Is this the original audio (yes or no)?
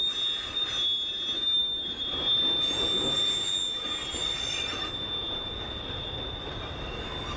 yes